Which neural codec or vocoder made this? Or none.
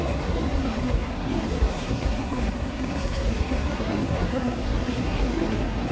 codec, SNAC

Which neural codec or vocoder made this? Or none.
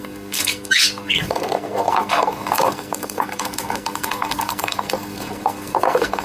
codec, SNAC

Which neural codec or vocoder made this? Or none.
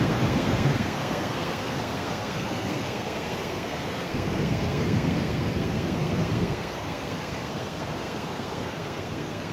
codec, SNAC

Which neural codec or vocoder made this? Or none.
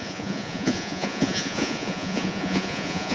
vocoder, Vocos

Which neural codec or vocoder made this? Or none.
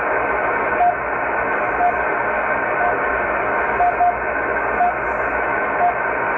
none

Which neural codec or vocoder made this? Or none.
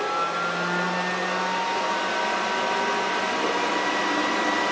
none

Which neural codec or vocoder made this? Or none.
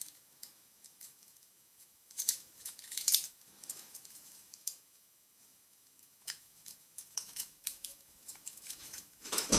autoencoder, DAC-VAE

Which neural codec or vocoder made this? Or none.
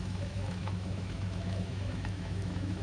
autoencoder, DAC-VAE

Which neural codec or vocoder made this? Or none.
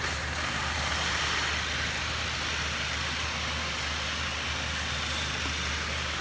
none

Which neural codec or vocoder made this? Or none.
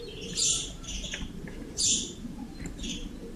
vocoder, BigVGAN v2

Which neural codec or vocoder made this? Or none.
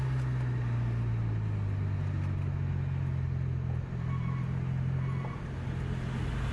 none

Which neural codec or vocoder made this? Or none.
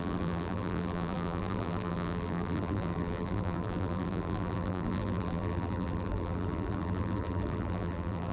vocoder, BigVGAN v2